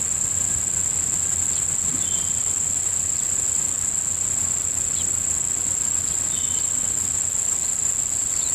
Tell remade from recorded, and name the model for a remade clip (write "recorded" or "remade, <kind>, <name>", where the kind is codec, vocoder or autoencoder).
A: remade, vocoder, BigVGAN v2